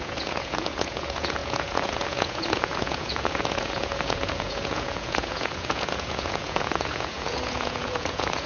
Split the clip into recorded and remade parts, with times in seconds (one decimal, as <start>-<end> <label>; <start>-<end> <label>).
0.0-8.5 remade

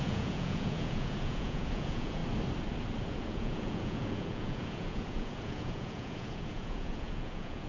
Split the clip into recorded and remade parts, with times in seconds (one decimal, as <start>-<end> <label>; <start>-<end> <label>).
0.0-2.2 remade; 2.2-3.0 recorded; 3.0-7.7 remade

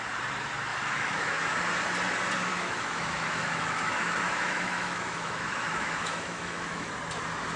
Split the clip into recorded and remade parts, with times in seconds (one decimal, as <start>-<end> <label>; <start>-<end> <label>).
0.0-0.7 recorded; 0.7-1.6 remade; 1.6-2.5 recorded; 2.5-6.9 remade; 6.9-7.6 recorded

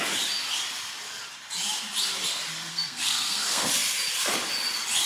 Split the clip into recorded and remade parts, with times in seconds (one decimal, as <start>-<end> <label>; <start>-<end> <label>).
0.0-2.7 recorded; 2.7-3.7 remade; 3.7-5.1 recorded